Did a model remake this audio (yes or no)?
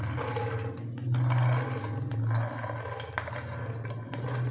no